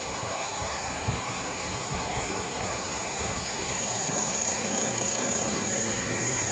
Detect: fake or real fake